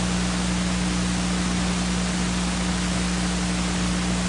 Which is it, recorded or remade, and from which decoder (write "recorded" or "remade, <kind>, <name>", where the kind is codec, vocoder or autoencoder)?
recorded